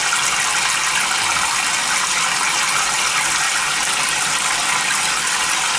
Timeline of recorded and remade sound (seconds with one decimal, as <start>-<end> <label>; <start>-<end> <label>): 0.0-5.8 recorded